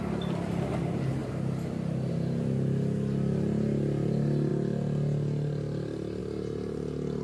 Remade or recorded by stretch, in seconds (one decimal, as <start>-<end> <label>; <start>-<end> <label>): 0.0-7.2 recorded